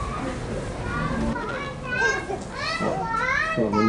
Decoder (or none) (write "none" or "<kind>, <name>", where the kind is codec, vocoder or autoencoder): none